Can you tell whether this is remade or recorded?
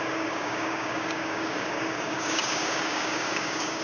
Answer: remade